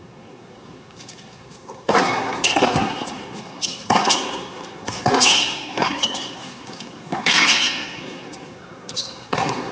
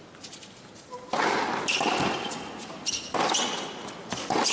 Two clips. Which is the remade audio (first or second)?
first